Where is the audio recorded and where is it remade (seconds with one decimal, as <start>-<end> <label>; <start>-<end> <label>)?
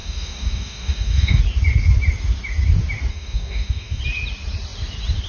0.0-1.4 remade; 1.4-3.1 recorded; 3.1-4.0 remade; 4.0-5.3 recorded